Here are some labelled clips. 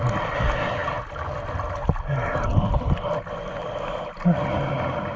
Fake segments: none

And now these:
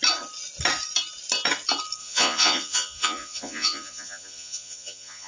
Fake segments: 2.0-5.3 (vocoder, Vocos)